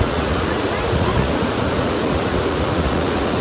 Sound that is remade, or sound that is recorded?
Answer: remade